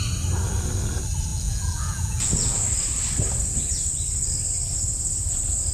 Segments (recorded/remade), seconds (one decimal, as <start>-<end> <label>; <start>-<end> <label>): 0.0-1.3 recorded; 1.3-2.6 remade; 2.6-5.7 recorded